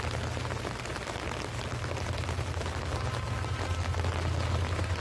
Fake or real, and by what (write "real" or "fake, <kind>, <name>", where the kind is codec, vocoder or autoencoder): real